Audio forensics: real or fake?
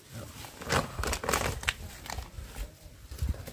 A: real